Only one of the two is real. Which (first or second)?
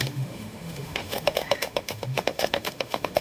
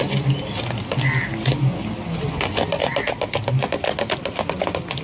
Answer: second